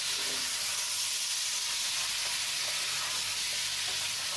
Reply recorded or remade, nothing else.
recorded